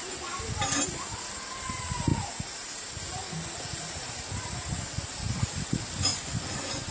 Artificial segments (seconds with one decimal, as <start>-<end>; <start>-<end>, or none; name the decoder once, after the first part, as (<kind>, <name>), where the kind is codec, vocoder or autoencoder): 6.1-6.9 (vocoder, Vocos)